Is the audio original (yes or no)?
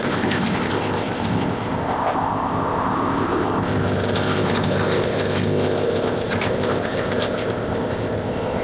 no